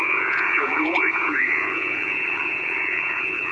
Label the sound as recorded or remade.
remade